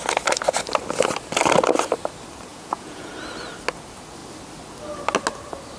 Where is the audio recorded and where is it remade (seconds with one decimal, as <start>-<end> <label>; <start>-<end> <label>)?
0.0-2.5 recorded; 2.5-3.1 remade; 3.1-5.8 recorded